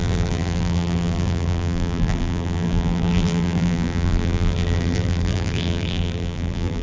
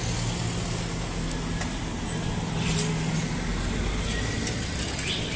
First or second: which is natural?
second